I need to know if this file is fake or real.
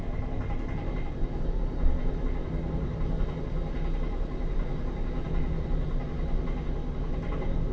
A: real